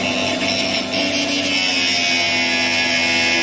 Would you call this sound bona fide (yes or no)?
yes